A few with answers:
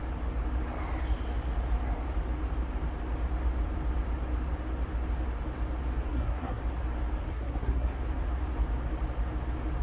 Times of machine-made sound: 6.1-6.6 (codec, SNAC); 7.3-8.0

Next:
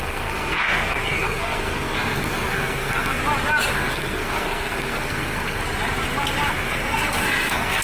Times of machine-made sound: 0.0-3.2 (codec, SNAC); 3.7-5.6; 6.5-7.8

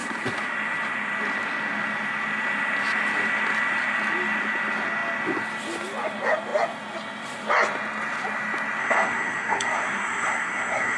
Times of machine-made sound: 8.8-11.0 (codec, SNAC)

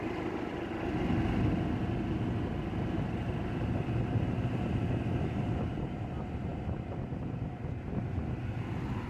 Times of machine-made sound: none

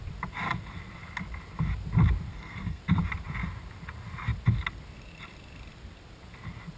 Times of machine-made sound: 2.3-2.8 (codec, SNAC)